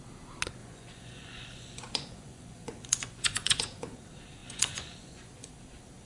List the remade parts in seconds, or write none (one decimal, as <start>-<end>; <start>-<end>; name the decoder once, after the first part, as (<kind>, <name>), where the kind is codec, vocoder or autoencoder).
0.6-4.0 (vocoder, Vocos); 4.4-5.5